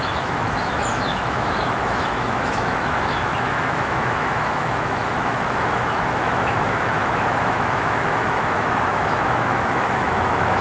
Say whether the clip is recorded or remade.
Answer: remade